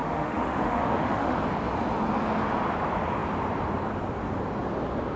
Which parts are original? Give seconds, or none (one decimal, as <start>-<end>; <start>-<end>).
1.4-5.2